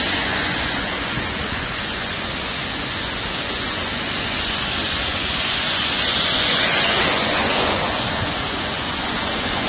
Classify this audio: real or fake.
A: fake